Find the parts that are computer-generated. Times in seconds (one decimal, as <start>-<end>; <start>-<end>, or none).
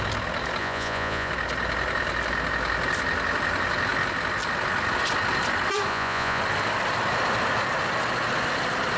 0.6-1.3; 5.9-6.4